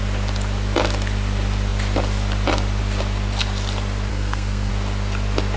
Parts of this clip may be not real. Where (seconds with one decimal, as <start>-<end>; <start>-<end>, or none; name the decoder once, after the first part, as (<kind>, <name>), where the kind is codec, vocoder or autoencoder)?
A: 4.1-4.7 (codec, SNAC)